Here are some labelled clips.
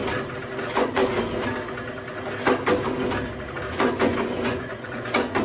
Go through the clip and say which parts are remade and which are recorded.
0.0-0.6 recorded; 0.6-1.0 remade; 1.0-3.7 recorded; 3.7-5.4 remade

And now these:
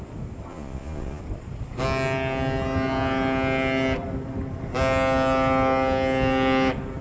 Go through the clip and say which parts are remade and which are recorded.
0.0-0.5 recorded; 0.5-1.2 remade; 1.2-7.0 recorded

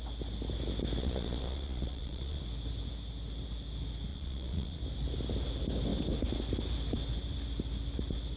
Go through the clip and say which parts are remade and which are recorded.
0.0-1.0 recorded; 1.0-2.4 remade; 2.4-4.1 recorded; 4.1-4.8 remade; 4.8-8.4 recorded

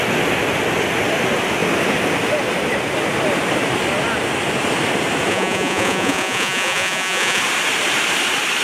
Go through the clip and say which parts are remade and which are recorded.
0.0-5.3 recorded; 5.3-7.4 remade; 7.4-8.6 recorded